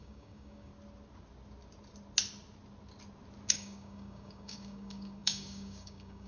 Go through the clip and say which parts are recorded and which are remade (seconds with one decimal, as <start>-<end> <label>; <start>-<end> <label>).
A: 0.0-0.7 remade; 0.7-3.5 recorded; 3.5-6.3 remade

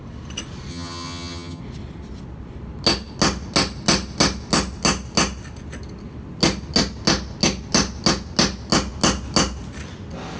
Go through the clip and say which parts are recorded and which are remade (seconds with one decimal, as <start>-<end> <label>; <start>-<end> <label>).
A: 0.0-0.7 recorded; 0.7-1.6 remade; 1.6-10.4 recorded

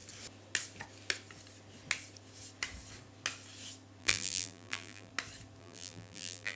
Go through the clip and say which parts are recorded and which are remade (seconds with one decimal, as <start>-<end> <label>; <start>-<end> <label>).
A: 0.0-4.0 recorded; 4.0-5.1 remade; 5.1-5.6 recorded; 5.6-6.6 remade

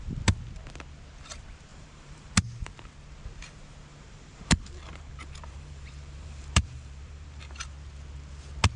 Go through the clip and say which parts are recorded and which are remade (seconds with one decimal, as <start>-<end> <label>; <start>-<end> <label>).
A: 0.0-1.7 recorded; 1.7-2.3 remade; 2.3-3.9 recorded; 3.9-7.7 remade; 7.7-8.8 recorded